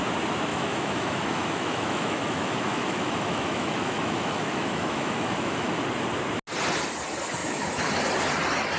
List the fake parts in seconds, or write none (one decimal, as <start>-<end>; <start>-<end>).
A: 0.5-5.7; 7.4-7.9